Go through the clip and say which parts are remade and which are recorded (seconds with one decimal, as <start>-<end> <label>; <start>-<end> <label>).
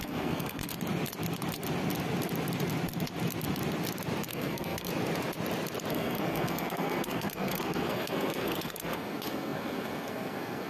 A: 0.0-0.6 remade; 0.6-4.3 recorded; 4.3-4.9 remade; 4.9-5.9 recorded; 5.9-10.7 remade